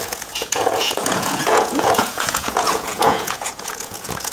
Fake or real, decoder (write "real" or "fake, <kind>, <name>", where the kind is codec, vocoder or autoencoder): fake, vocoder, Vocos